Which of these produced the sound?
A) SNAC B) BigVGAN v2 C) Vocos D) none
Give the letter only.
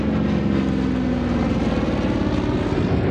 D